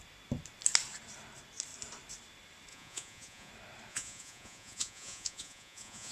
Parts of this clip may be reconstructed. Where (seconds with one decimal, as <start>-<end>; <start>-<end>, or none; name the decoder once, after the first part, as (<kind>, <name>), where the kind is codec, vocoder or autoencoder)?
2.7-3.5 (vocoder, Vocos); 3.9-6.1